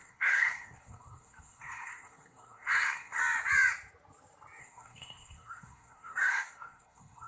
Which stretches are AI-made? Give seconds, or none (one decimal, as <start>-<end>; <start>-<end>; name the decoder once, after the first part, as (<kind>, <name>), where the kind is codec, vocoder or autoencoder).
0.0-3.2 (codec, SNAC); 4.6-7.3